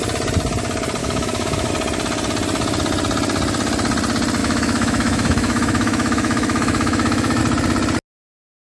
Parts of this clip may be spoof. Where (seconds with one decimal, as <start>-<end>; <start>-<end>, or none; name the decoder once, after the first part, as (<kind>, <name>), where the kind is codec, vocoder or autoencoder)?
1.0-1.7 (autoencoder, DAC-VAE); 4.4-7.4